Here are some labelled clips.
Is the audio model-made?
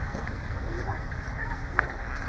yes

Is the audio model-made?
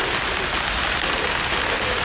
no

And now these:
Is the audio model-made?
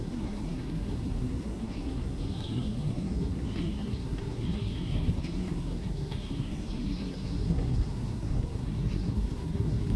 yes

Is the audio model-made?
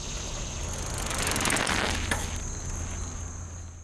no